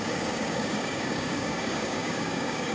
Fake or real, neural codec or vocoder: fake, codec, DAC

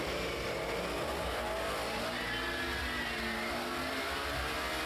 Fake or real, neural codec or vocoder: real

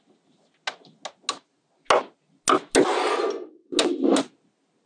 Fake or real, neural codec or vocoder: real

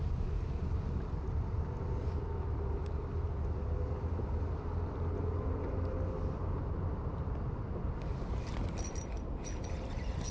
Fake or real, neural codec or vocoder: real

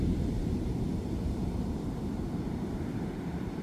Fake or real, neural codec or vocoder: fake, vocoder, BigVGAN v2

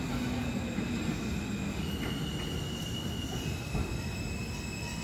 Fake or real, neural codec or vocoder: real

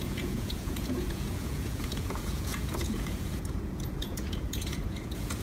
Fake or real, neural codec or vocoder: fake, vocoder, Vocos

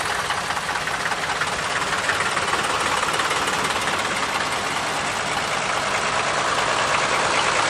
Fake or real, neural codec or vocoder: real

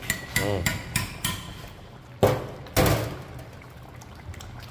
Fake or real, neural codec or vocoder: real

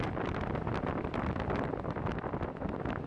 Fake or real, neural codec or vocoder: real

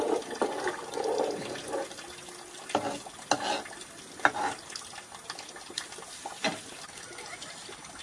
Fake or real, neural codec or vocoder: real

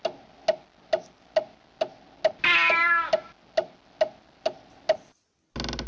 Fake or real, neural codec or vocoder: real